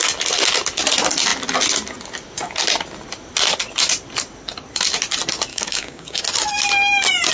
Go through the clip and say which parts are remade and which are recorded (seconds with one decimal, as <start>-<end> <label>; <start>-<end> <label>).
0.0-5.5 recorded; 5.5-6.2 remade; 6.2-7.3 recorded